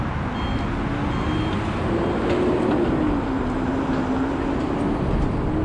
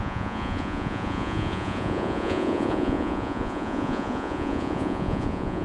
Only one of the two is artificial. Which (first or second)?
second